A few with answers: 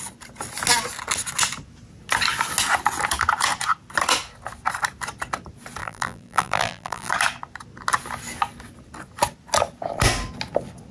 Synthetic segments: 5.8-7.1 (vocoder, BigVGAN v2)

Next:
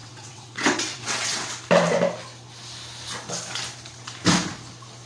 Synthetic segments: 0.0-1.5 (vocoder, WaveNeXt)

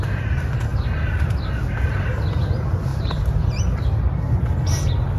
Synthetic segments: 2.9-3.6 (vocoder, BigVGAN v2)

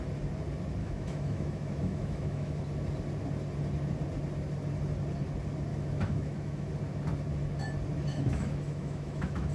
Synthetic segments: 0.8-2.6 (autoencoder, DAC-VAE); 5.7-6.7; 8.1-9.5

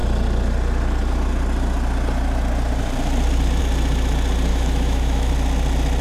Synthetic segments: 4.5-5.3 (autoencoder, DAC-VAE)

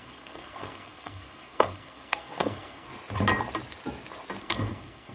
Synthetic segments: 0.0-2.9 (codec, SNAC); 4.4-5.1

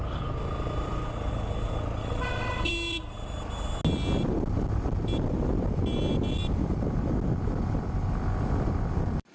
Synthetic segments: 2.0-2.7 (vocoder, WaveNeXt)

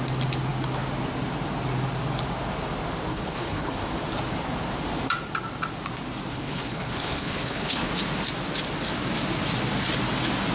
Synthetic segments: 3.1-3.7 (codec, HILCodec); 6.3-7.9